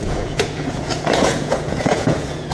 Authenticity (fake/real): fake